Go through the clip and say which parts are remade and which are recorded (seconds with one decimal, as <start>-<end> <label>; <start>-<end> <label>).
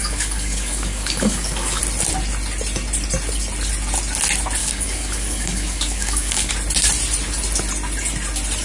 0.0-1.8 remade; 1.8-4.6 recorded; 4.6-6.5 remade; 6.5-8.6 recorded